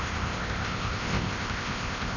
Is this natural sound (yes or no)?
no